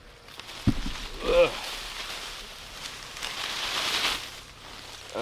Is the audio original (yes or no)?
yes